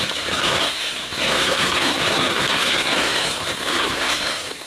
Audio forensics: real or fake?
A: fake